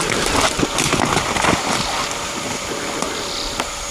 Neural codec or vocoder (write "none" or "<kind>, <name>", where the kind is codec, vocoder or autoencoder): none